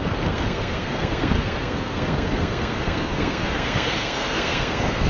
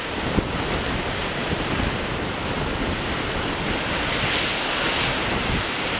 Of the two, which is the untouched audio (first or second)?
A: second